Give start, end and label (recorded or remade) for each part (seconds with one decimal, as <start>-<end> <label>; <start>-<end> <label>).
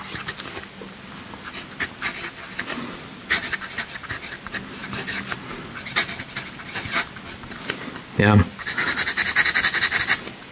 0.0-10.5 recorded